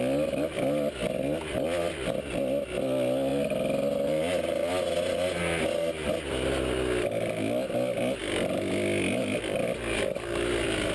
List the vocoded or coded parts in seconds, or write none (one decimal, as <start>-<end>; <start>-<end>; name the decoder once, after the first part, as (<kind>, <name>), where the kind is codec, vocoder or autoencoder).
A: none